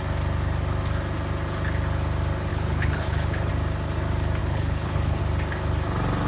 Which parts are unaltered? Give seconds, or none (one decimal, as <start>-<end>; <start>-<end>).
0.0-2.5; 3.5-4.4; 5.2-6.3